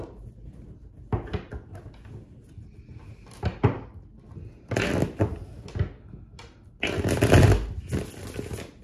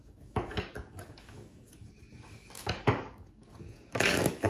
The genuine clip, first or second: first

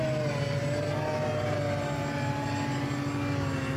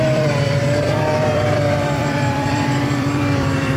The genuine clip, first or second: first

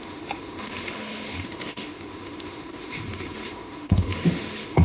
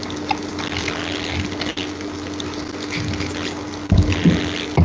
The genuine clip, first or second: second